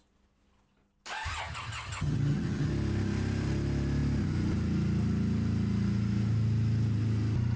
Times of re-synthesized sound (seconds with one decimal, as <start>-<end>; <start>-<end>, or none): 1.4-2.7